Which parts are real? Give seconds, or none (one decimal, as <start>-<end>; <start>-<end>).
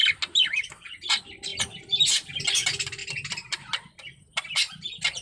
0.0-5.2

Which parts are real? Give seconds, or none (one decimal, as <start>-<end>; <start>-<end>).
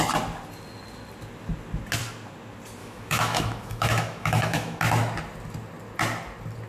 0.0-2.8; 4.8-6.7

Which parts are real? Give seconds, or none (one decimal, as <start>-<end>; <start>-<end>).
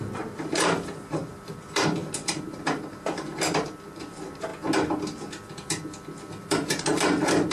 4.5-6.4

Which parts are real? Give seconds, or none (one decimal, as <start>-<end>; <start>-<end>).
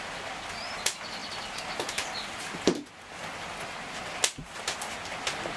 0.0-4.4; 4.9-5.6